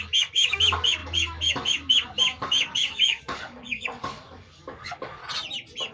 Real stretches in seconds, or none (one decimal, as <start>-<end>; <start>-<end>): 5.2-5.9